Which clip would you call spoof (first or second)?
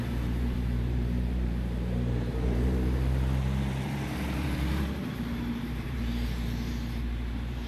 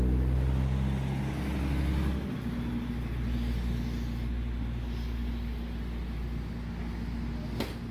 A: first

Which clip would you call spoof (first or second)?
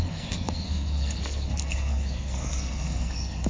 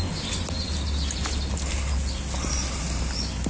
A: first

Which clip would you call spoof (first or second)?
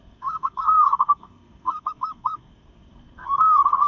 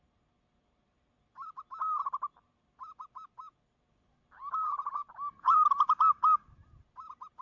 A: first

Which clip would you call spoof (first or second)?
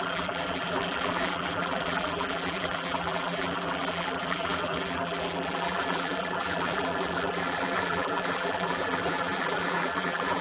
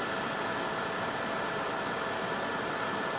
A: first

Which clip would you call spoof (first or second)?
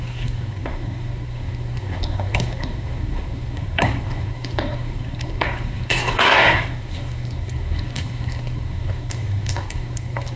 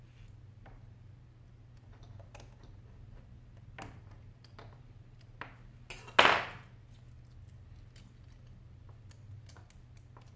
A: first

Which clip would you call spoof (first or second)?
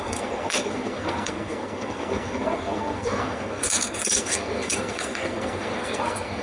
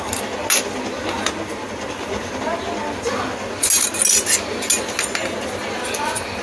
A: first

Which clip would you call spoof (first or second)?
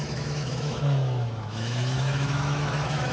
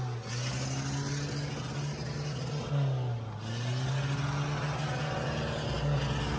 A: first